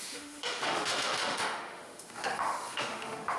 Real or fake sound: fake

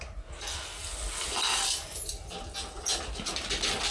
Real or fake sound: real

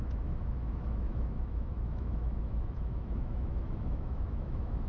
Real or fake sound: fake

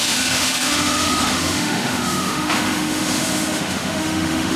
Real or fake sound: fake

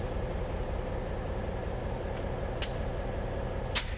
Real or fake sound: real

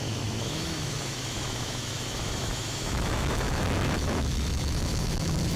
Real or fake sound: fake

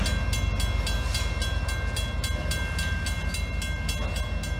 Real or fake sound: real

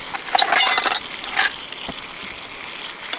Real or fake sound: real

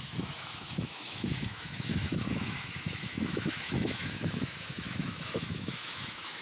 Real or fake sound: fake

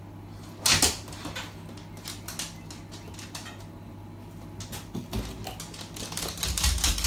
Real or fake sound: real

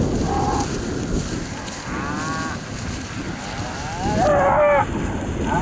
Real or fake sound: real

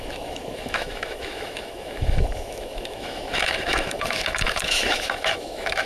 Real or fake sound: fake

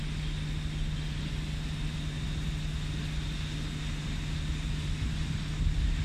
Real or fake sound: real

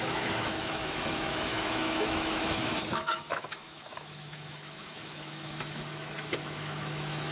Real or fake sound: fake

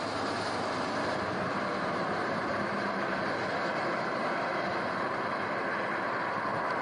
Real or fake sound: real